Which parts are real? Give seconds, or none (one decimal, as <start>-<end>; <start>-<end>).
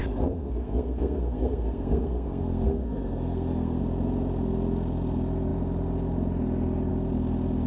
3.8-7.7